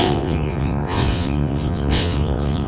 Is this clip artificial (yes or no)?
yes